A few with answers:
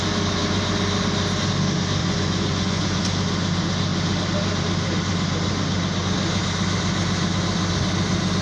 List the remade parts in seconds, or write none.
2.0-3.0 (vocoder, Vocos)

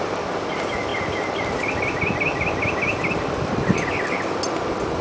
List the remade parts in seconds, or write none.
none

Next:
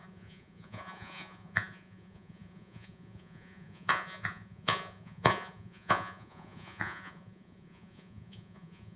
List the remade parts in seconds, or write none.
0.0-9.0 (vocoder, Vocos)